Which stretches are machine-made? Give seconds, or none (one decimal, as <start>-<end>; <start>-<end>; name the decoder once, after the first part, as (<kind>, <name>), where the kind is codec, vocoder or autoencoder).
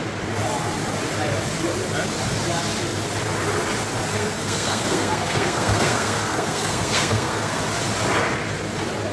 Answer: 4.1-7.6 (codec, SNAC)